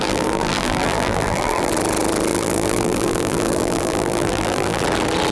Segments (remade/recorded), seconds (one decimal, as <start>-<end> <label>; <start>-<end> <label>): 0.0-1.7 remade; 1.7-2.3 recorded; 2.3-4.8 remade; 4.8-5.3 recorded